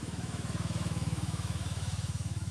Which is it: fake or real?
fake